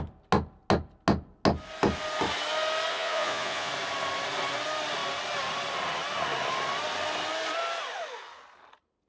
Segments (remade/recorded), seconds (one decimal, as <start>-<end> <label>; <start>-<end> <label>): 0.0-2.9 recorded; 2.9-3.7 remade; 3.7-9.1 recorded